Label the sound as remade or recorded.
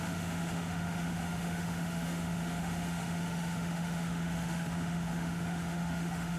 remade